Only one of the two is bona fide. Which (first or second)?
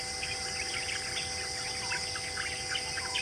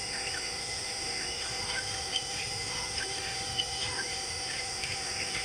first